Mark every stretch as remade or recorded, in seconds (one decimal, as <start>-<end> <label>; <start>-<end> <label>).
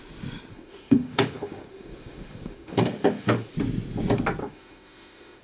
0.0-0.5 recorded; 0.5-3.5 remade; 3.5-4.4 recorded; 4.4-5.4 remade